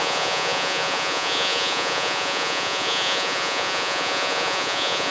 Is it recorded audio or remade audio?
remade